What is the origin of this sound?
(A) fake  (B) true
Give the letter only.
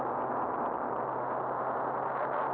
B